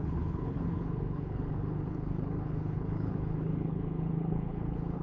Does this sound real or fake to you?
fake